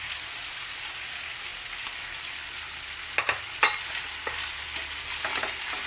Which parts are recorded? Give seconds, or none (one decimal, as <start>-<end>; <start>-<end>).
0.0-5.9